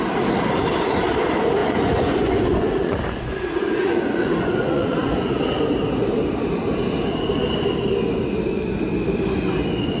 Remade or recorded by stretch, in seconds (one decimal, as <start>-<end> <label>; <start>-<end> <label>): 0.0-1.6 recorded; 1.6-5.4 remade; 5.4-10.0 recorded